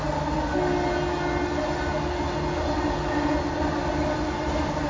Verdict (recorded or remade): recorded